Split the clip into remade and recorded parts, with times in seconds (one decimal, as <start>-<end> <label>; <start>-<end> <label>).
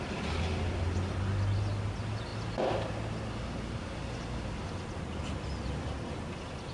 0.0-6.7 recorded